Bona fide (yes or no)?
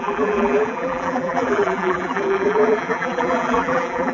no